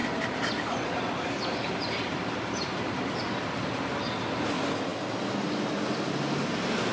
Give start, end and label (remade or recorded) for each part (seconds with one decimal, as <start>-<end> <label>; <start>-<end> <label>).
0.0-4.1 remade; 4.1-6.9 recorded